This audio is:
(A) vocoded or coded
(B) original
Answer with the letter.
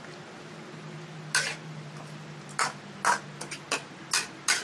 B